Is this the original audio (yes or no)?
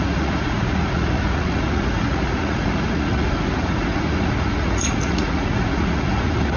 no